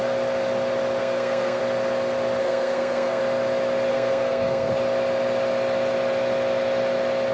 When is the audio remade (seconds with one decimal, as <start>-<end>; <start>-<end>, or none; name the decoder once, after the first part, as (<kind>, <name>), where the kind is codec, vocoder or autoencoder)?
1.0-1.6 (codec, SNAC); 2.4-3.2; 3.9-4.7